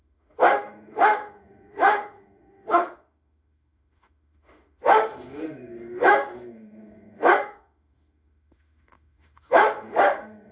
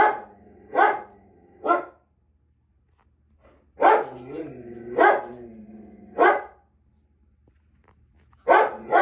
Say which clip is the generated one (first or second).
first